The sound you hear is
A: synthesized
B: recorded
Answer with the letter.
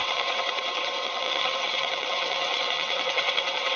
A